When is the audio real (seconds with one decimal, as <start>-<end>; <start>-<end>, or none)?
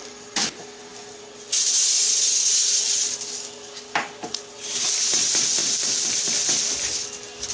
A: 0.0-5.6; 6.3-7.5